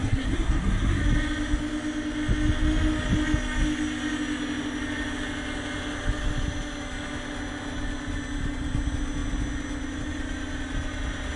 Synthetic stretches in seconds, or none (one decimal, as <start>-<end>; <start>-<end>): 0.0-1.0